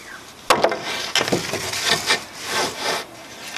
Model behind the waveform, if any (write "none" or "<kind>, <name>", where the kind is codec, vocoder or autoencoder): none